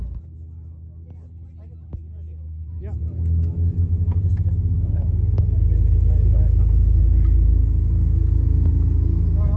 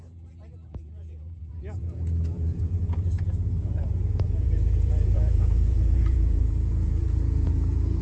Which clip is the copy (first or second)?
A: second